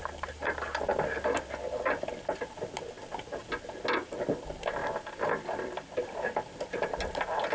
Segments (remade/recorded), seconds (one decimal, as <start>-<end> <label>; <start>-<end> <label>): 0.0-7.5 recorded